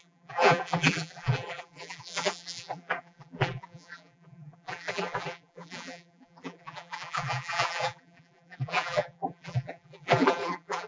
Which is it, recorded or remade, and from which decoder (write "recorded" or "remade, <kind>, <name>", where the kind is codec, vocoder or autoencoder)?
remade, vocoder, BigVGAN v2